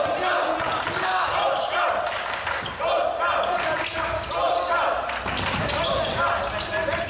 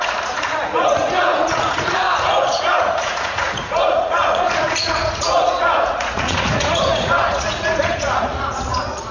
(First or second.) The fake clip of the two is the second